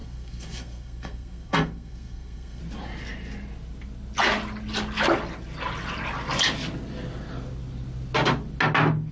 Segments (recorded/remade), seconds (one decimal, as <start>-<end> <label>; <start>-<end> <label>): 0.0-2.6 remade; 2.6-9.1 recorded